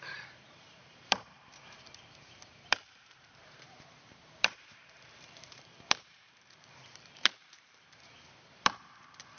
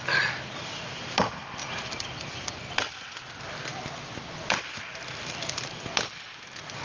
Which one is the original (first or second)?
second